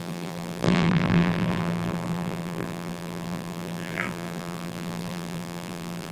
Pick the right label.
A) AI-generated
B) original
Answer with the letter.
A